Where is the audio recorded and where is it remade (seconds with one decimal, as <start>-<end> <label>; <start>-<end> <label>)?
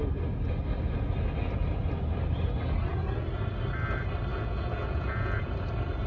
0.0-4.3 recorded; 4.3-5.5 remade; 5.5-6.1 recorded